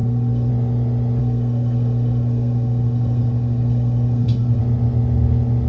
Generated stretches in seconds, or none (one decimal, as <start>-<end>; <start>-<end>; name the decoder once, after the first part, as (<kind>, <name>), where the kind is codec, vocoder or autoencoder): 0.0-0.5 (codec, SNAC); 1.2-4.6